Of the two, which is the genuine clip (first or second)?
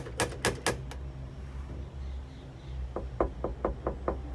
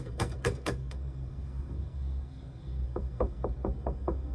first